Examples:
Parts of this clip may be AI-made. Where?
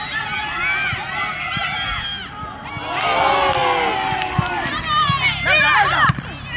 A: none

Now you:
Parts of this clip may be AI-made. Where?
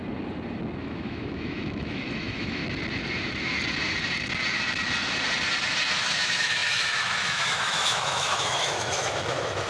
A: 0.8-2.6 (autoencoder, DAC-VAE); 6.0-9.7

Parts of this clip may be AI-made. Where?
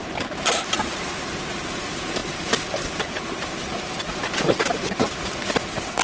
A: none